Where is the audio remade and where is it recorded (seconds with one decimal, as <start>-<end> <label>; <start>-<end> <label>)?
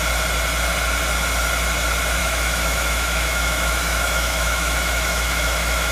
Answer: 0.0-2.2 recorded; 2.2-5.9 remade